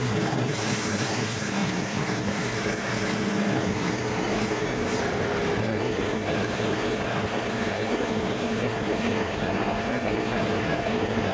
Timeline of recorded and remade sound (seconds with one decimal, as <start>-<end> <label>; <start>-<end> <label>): 0.0-5.0 remade; 5.0-5.6 recorded; 5.6-11.3 remade